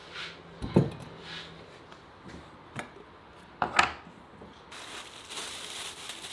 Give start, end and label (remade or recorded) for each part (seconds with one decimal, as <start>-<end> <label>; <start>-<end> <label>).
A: 0.0-6.3 recorded